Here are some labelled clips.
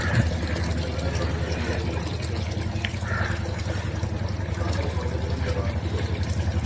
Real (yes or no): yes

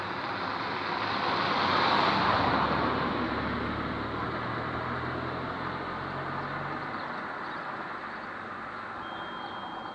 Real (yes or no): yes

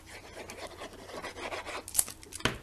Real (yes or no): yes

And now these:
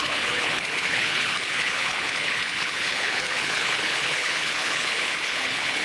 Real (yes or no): no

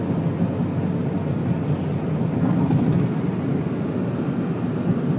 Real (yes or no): yes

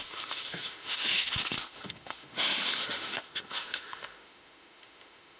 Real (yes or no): no